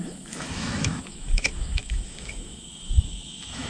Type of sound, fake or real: fake